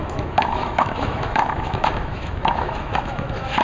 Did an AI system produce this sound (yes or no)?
yes